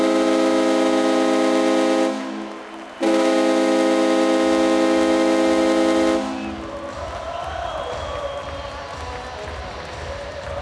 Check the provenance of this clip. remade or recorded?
recorded